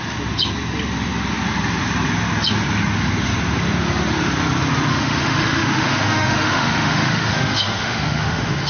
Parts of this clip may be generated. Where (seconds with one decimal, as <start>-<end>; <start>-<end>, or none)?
4.9-8.7